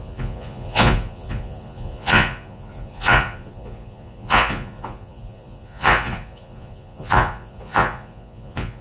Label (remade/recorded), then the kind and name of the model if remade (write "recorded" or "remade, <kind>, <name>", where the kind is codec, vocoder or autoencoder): remade, vocoder, Vocos